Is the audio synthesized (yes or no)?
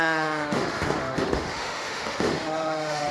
yes